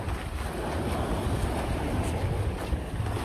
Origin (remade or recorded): recorded